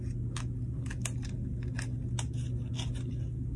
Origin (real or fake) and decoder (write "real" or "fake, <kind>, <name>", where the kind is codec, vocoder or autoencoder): real